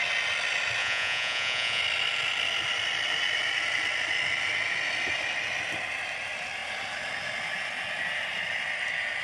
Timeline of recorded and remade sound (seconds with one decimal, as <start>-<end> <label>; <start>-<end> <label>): 0.0-0.8 recorded; 0.8-1.8 remade; 1.8-9.2 recorded